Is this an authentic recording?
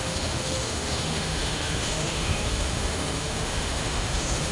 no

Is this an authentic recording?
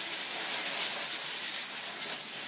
yes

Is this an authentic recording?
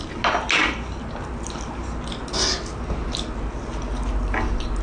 yes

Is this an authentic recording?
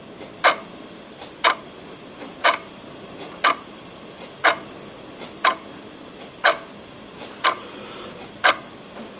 yes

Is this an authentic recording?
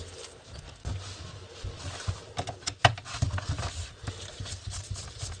yes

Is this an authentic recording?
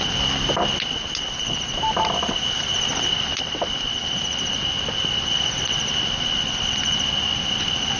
yes